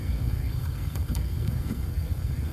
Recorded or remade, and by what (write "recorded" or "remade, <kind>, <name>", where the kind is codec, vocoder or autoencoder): remade, codec, SNAC